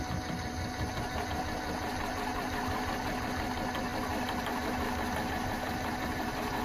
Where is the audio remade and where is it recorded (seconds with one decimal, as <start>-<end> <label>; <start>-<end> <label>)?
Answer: 0.0-2.3 recorded; 2.3-3.3 remade; 3.3-3.9 recorded; 3.9-5.3 remade; 5.3-6.6 recorded